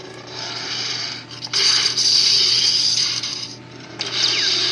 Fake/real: fake